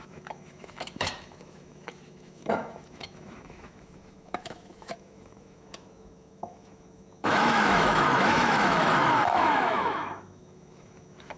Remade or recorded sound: remade